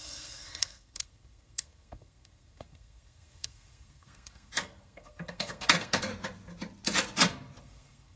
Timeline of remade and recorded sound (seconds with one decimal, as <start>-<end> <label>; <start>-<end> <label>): 0.0-6.1 remade; 6.1-7.6 recorded; 7.6-8.2 remade